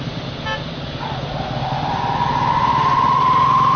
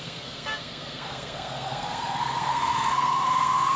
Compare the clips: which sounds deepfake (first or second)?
second